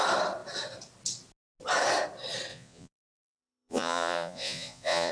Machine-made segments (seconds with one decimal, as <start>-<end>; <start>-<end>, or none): 2.5-5.1